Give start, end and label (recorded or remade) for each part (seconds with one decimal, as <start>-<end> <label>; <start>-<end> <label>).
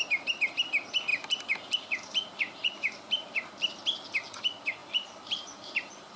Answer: 0.0-1.1 recorded; 1.1-3.8 remade; 3.8-4.8 recorded; 4.8-6.2 remade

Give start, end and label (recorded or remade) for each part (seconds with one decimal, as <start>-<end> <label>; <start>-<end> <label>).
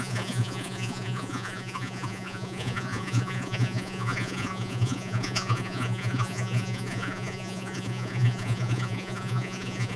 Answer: 0.0-10.0 remade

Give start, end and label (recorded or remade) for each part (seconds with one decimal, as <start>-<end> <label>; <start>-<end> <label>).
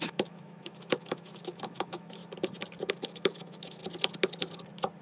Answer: 0.0-2.2 remade; 2.2-2.9 recorded; 2.9-3.8 remade; 3.8-5.0 recorded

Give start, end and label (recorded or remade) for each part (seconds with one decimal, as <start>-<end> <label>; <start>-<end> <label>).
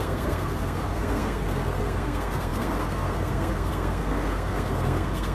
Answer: 0.0-5.3 remade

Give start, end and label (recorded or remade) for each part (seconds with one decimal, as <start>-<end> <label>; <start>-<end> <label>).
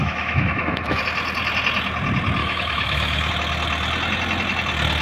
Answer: 0.0-1.0 remade; 1.0-2.4 recorded; 2.4-3.3 remade; 3.3-5.0 recorded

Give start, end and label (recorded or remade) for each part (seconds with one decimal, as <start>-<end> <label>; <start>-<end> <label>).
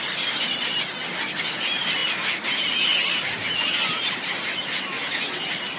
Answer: 0.0-2.0 recorded; 2.0-3.7 remade; 3.7-5.8 recorded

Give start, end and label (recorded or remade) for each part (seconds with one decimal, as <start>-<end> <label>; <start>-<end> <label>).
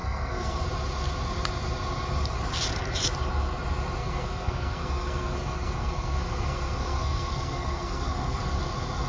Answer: 0.0-0.6 remade; 0.6-4.0 recorded; 4.0-8.6 remade; 8.6-9.1 recorded